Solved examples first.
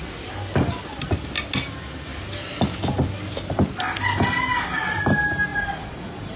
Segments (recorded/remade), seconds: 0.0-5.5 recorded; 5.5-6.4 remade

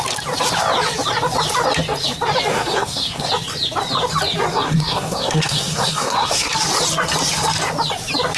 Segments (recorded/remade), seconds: 0.0-2.5 recorded; 2.5-3.3 remade; 3.3-4.5 recorded; 4.5-6.5 remade; 6.5-8.4 recorded

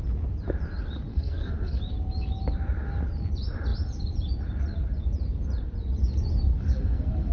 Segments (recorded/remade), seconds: 0.0-1.1 recorded; 1.1-1.8 remade; 1.8-6.5 recorded; 6.5-7.3 remade

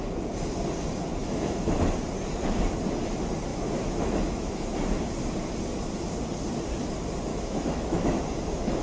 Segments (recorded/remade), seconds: 0.0-1.2 recorded; 1.2-1.8 remade; 1.8-3.5 recorded; 3.5-4.7 remade; 4.7-7.3 recorded; 7.3-8.2 remade; 8.2-8.8 recorded